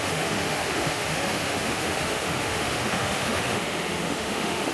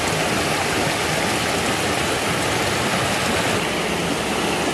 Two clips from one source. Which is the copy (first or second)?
first